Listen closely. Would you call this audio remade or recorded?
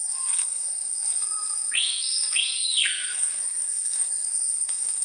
remade